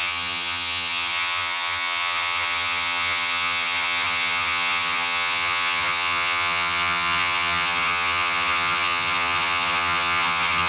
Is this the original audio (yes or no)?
no